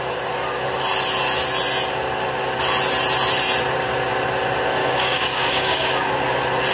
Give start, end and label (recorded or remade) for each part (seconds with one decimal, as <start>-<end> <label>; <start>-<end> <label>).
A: 0.0-4.8 recorded; 4.8-6.1 remade; 6.1-6.7 recorded